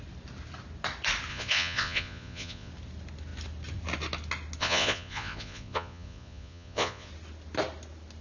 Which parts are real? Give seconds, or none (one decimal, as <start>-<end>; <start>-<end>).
0.0-1.3; 2.7-4.6; 7.1-8.2